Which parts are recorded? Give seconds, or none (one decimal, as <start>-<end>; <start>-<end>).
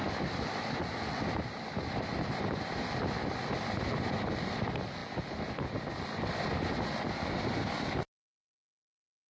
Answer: 0.0-9.3